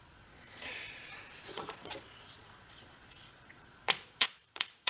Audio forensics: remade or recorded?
remade